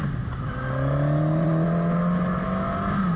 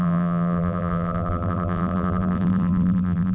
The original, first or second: first